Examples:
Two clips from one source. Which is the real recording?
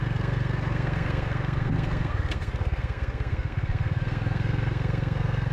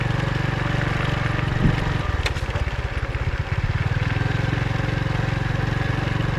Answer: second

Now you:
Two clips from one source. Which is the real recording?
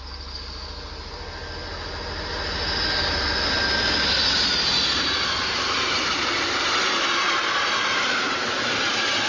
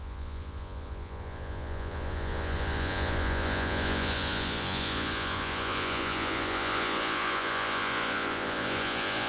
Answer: first